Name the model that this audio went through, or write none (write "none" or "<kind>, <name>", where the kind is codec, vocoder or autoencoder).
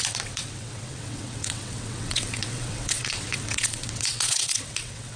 vocoder, WaveNeXt